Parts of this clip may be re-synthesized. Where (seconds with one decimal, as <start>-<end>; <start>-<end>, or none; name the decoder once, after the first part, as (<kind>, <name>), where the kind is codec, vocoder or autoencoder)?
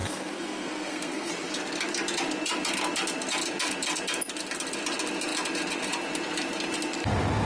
0.0-1.3 (codec, SNAC)